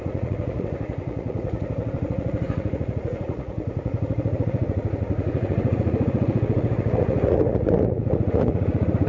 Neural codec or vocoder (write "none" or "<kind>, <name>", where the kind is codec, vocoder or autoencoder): vocoder, Vocos